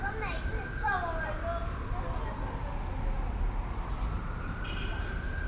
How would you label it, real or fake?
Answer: real